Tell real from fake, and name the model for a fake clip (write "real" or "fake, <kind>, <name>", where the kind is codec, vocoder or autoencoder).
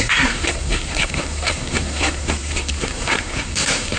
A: fake, codec, SNAC